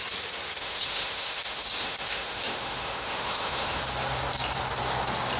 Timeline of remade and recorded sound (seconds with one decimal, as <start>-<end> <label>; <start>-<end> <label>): 0.0-0.6 recorded; 0.6-3.8 remade; 3.8-5.4 recorded